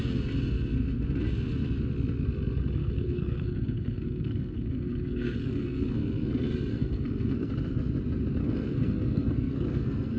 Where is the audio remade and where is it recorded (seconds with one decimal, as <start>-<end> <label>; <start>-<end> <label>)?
0.0-2.8 recorded; 2.8-6.3 remade; 6.3-6.7 recorded; 6.7-7.5 remade; 7.5-8.4 recorded; 8.4-10.2 remade